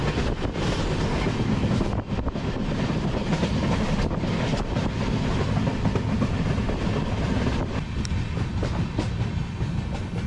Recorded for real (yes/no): yes